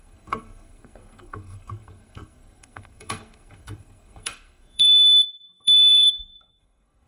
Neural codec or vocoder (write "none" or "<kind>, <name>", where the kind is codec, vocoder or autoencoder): codec, SNAC